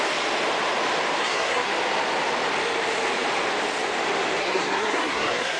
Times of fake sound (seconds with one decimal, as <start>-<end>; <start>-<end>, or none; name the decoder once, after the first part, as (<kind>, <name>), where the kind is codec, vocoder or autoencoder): 1.2-1.7 (codec, SNAC); 4.4-5.6